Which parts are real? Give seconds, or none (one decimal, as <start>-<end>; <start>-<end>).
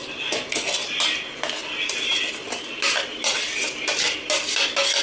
0.0-5.0